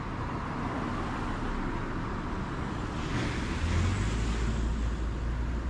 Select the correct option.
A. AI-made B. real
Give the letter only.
B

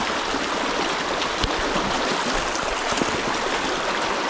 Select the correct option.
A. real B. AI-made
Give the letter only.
A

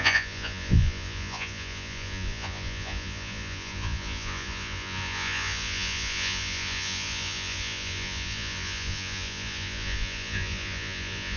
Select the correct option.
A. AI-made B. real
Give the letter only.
A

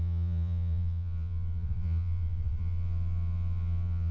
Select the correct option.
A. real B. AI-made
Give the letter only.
B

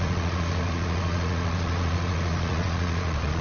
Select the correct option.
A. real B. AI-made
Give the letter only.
B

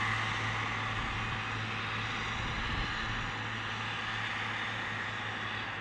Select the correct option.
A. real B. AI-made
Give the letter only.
A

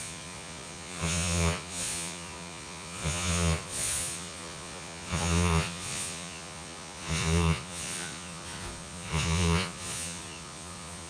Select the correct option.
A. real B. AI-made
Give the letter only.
B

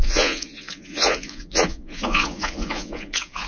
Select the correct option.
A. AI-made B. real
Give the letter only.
A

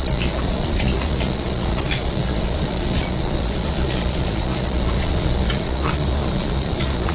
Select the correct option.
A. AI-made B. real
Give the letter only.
A